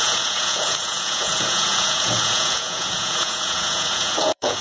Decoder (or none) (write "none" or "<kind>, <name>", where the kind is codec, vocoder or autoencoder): vocoder, Vocos